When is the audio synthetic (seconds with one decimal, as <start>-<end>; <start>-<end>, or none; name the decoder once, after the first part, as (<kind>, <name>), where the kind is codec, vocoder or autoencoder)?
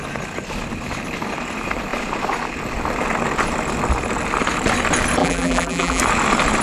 5.2-6.0 (vocoder, BigVGAN v2)